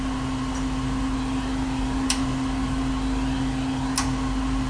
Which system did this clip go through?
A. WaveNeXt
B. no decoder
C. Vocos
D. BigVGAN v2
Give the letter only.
B